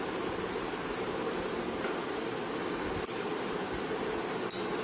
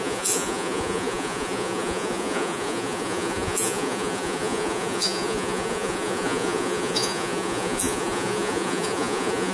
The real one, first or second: first